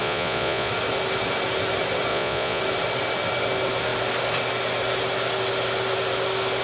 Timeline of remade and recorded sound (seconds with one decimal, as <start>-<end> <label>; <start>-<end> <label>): 0.0-0.7 remade; 0.7-2.1 recorded; 2.1-2.6 remade; 2.6-6.6 recorded